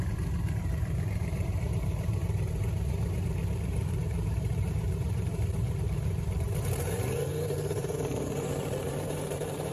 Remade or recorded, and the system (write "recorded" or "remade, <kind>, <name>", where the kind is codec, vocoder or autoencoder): remade, vocoder, BigVGAN v2